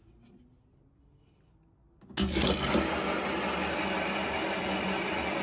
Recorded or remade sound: recorded